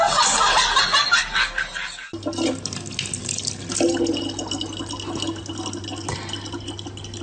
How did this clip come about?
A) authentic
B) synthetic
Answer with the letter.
A